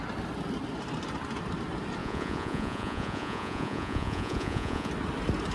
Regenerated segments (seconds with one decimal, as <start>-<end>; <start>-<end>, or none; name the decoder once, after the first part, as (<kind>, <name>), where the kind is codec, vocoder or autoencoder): 2.0-4.9 (vocoder, Vocos)